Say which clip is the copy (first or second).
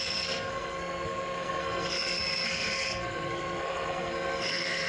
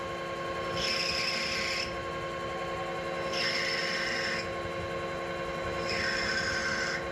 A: first